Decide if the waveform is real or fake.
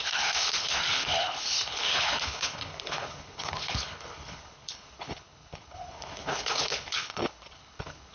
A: fake